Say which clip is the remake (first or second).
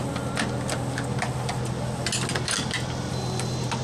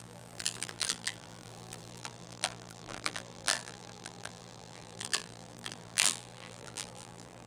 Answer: second